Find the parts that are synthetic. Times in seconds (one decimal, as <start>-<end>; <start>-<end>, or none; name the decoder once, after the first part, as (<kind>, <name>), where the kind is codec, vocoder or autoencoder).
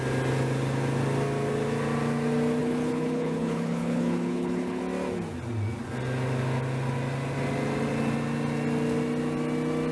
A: 2.6-4.8 (codec, HILCodec)